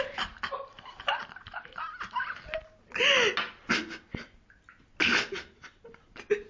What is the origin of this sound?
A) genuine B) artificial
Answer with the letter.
A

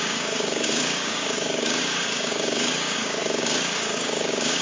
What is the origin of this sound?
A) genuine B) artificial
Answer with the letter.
B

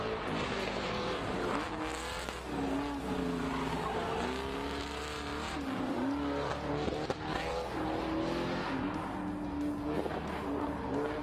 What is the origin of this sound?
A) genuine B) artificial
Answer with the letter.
A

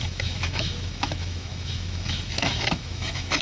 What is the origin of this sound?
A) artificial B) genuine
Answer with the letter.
A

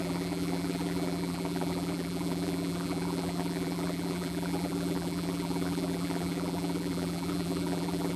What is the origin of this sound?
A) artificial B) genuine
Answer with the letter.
A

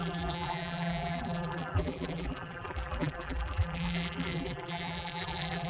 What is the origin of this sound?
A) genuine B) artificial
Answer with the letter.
B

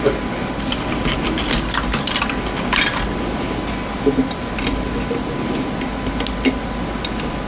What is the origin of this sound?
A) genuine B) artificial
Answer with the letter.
A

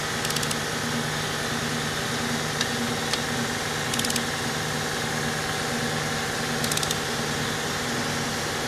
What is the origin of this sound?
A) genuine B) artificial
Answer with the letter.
A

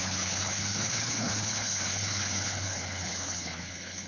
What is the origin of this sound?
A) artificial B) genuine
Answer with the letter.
A